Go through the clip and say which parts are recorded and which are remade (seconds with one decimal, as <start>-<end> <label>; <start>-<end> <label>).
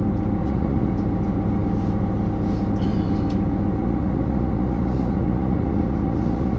0.0-0.4 recorded; 0.4-0.9 remade; 0.9-3.8 recorded; 3.8-6.6 remade